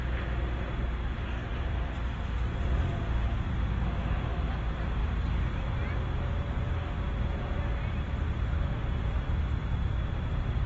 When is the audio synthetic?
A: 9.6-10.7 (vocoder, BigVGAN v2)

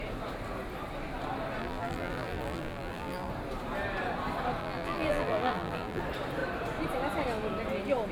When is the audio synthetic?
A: 1.6-3.3 (vocoder, BigVGAN v2); 4.6-6.0

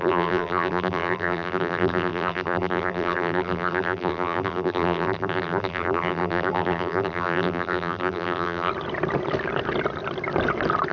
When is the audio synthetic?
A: 0.0-8.7 (vocoder, BigVGAN v2)